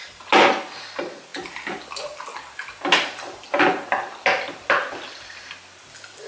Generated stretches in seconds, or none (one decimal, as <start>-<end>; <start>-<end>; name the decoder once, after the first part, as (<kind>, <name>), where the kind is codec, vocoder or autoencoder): none